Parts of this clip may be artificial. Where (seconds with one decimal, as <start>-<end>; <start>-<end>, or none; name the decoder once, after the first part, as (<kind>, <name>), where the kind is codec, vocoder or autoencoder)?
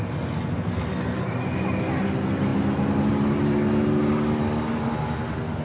none